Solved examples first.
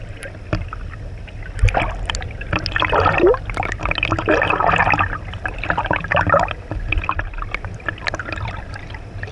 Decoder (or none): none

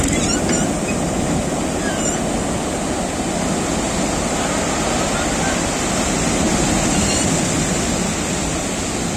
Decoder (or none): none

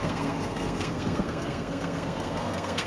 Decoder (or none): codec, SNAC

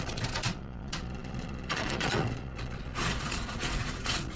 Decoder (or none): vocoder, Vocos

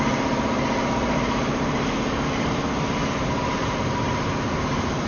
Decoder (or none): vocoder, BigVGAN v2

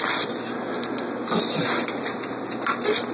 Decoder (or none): none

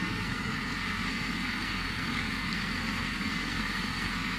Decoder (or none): codec, SNAC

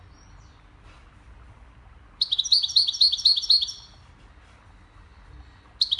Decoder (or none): none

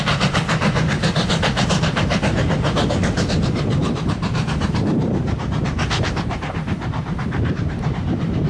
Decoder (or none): vocoder, BigVGAN v2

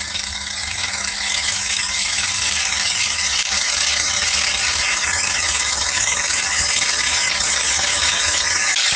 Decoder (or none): codec, DAC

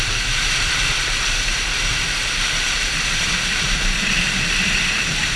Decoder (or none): vocoder, BigVGAN v2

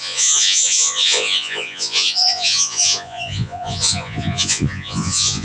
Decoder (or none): vocoder, Vocos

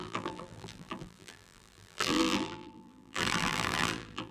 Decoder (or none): vocoder, BigVGAN v2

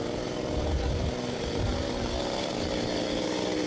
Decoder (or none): none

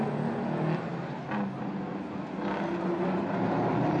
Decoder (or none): none